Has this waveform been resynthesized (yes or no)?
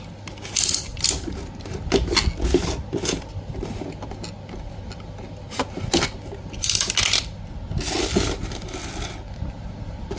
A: no